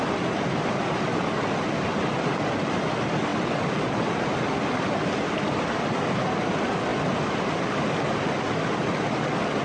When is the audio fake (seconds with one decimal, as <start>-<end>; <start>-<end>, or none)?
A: none